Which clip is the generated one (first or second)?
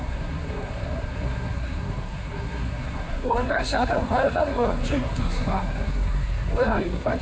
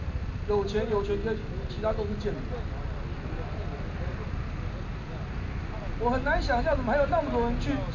first